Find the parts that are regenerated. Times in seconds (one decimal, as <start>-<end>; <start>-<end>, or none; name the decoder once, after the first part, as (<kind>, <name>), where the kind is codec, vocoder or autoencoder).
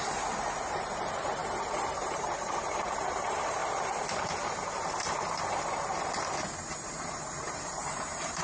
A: 0.0-1.4 (vocoder, BigVGAN v2); 1.9-3.6; 6.7-8.4